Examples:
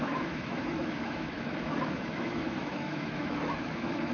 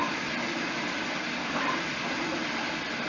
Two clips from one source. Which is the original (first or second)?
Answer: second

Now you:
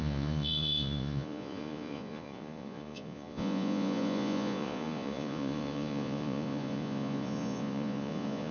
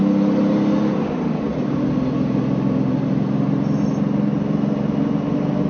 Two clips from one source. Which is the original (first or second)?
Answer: second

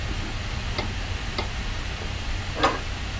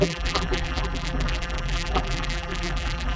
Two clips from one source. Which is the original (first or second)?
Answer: first